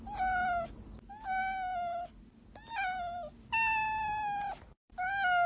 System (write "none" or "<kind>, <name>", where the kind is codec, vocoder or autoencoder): none